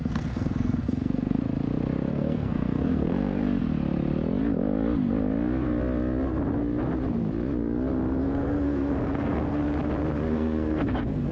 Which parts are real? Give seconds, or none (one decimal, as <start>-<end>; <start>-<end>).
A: 1.4-2.1; 3.4-8.2; 9.6-10.3